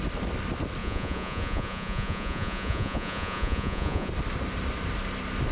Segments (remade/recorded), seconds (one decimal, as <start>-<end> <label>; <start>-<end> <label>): 0.0-0.8 recorded; 0.8-4.1 remade; 4.1-5.5 recorded